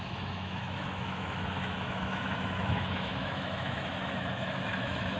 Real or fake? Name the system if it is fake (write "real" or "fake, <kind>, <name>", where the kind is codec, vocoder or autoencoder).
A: fake, autoencoder, DAC-VAE